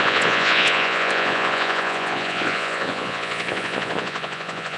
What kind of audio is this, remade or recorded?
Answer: remade